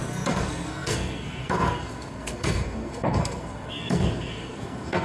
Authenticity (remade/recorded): remade